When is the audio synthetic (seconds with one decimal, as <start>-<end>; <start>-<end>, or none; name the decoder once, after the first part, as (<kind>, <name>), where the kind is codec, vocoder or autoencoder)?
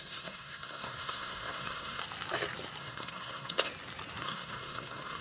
0.0-2.0 (codec, SNAC); 2.8-3.7; 4.2-5.2